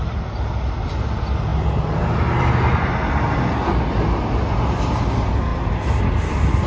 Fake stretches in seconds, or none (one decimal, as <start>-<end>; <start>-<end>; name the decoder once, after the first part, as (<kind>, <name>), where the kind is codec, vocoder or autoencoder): none